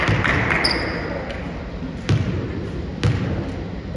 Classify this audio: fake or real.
real